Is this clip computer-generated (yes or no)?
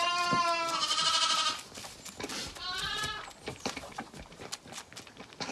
no